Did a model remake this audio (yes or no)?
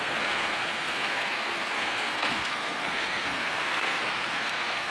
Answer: yes